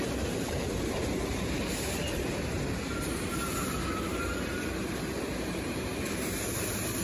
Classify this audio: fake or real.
fake